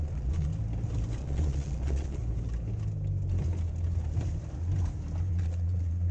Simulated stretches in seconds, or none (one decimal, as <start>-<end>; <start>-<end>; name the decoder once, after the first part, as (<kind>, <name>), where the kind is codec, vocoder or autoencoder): 0.0-0.5 (vocoder, Vocos); 1.2-2.2; 5.3-6.1